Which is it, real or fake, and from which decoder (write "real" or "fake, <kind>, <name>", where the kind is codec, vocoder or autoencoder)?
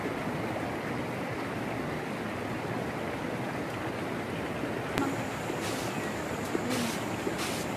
real